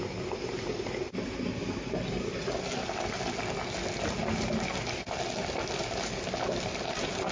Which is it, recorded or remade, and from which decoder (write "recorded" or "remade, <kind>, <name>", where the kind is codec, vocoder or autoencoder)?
recorded